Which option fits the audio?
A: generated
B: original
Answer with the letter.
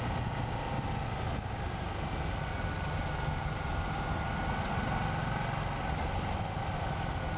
B